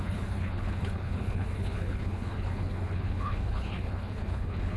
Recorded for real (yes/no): no